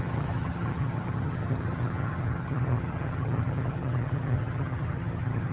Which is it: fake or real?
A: fake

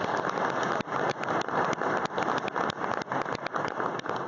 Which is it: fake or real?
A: real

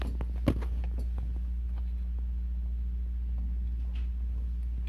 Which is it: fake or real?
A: real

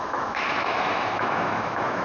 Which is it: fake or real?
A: fake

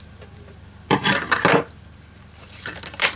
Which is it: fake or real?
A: real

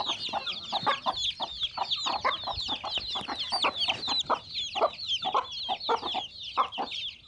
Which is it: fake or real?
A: real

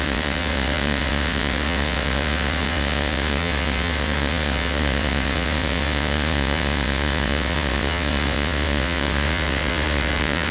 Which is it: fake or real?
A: fake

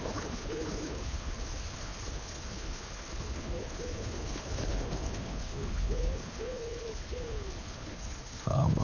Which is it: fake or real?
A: fake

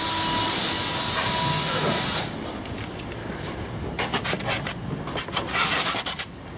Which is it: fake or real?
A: real